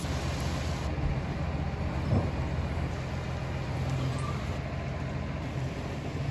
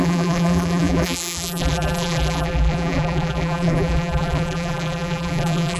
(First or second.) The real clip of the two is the first